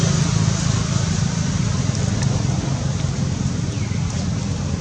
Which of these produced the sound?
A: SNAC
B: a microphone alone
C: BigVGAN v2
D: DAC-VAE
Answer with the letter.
B